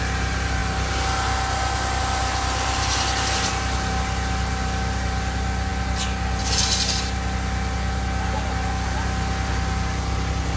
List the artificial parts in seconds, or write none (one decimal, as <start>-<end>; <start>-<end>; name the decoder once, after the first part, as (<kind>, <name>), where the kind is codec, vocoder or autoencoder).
none